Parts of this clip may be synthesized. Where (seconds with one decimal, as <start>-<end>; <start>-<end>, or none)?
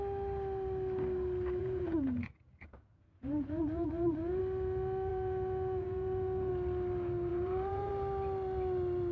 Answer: 1.6-4.4; 5.1-6.5; 7.3-7.9